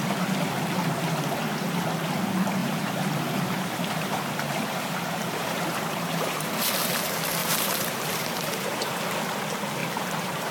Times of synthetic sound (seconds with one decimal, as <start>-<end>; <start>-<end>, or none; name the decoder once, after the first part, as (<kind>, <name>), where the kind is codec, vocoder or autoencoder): 2.6-6.5 (vocoder, BigVGAN v2); 7.4-9.0; 9.8-10.5